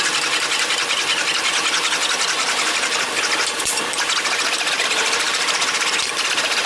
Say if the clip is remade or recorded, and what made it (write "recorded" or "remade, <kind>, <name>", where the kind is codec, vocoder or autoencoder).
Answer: recorded